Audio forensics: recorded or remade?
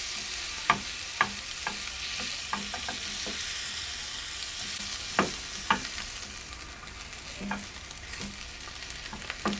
recorded